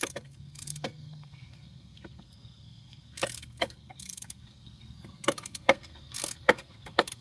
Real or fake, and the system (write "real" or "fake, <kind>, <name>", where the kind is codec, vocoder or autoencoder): fake, codec, SNAC